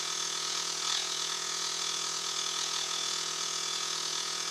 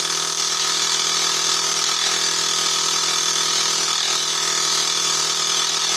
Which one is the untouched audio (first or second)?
second